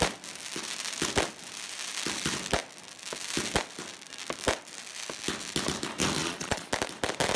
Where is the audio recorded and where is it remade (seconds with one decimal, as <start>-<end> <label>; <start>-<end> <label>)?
0.0-6.2 recorded; 6.2-6.7 remade; 6.7-7.4 recorded